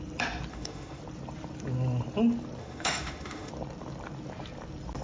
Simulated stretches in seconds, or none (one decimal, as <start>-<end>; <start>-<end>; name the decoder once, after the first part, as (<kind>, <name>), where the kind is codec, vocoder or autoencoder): 0.5-1.0 (autoencoder, DAC-VAE); 2.6-3.5